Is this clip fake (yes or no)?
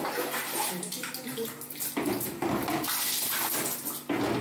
no